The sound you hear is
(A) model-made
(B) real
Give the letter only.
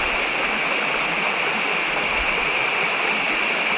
B